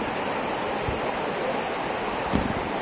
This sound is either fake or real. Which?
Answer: real